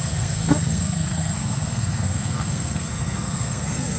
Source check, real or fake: fake